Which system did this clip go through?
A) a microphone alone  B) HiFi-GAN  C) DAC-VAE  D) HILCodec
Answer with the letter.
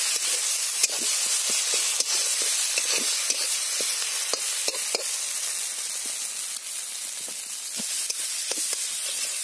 A